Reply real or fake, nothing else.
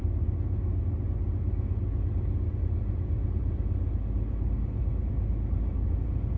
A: real